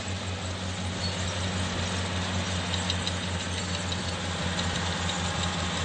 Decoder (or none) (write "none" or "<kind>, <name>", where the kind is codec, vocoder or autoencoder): none